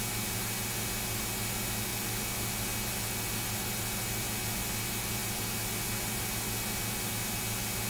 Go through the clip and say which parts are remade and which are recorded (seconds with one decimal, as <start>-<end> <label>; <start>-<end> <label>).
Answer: 0.0-7.9 recorded